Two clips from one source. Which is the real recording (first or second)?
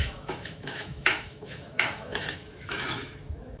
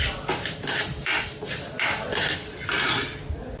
second